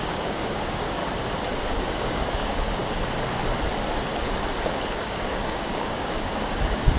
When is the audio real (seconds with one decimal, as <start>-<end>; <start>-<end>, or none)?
1.0-1.6; 2.8-4.9